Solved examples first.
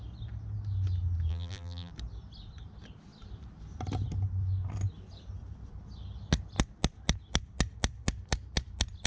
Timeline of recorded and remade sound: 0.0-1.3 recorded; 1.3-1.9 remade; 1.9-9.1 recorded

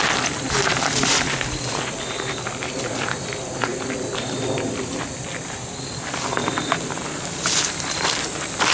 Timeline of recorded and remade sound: 0.0-8.7 recorded

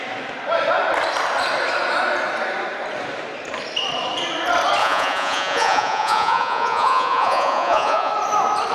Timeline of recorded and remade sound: 0.0-4.8 recorded; 4.8-8.1 remade; 8.1-8.7 recorded

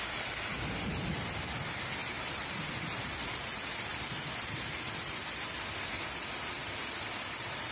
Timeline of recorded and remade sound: 0.0-0.5 remade; 0.5-1.4 recorded; 1.4-7.7 remade

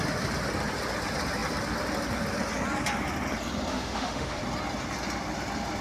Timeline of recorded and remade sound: 0.0-3.7 recorded; 3.7-4.4 remade; 4.4-5.8 recorded

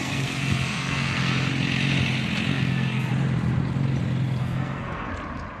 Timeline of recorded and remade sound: 0.0-1.5 remade; 1.5-2.5 recorded; 2.5-3.1 remade; 3.1-4.4 recorded; 4.4-5.1 remade; 5.1-5.6 recorded

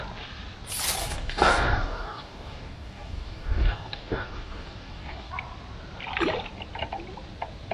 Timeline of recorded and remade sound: 0.0-1.0 recorded; 1.0-5.3 remade; 5.3-7.7 recorded